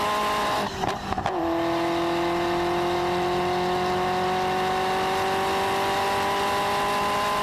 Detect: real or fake real